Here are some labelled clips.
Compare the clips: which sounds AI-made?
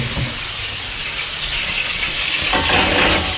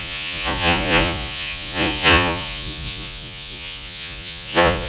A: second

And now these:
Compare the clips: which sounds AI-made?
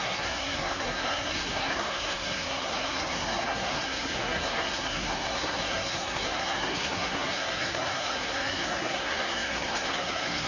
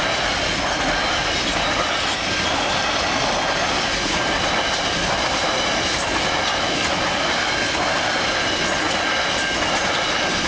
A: first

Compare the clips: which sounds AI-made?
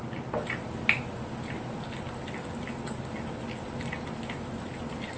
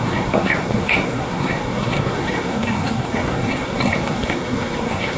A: second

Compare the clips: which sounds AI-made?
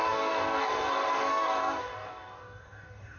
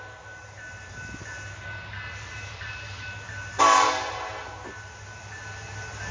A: first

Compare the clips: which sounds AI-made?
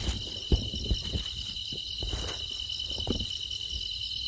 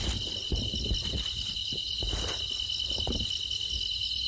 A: first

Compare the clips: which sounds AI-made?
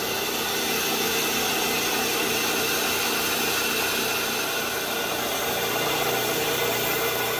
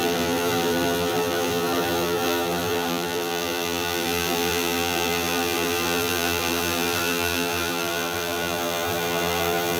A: second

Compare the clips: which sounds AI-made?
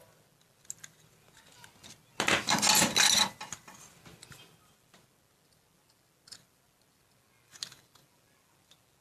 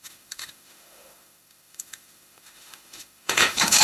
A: second